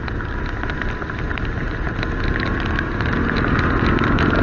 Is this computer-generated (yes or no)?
no